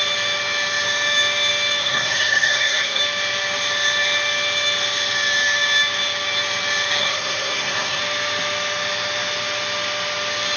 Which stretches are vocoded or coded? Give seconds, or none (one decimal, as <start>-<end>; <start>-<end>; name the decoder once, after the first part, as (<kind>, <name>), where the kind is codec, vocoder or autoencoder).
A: 1.8-3.0 (codec, SNAC); 7.0-8.0